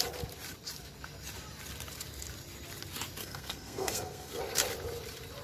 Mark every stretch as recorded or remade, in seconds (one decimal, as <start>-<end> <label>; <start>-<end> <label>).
0.0-3.2 recorded; 3.2-4.4 remade; 4.4-5.4 recorded